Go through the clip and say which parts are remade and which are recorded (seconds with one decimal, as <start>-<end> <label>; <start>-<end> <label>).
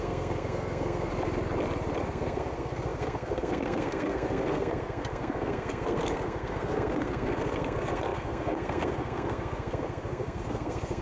0.0-1.1 remade; 1.1-2.0 recorded; 2.0-11.0 remade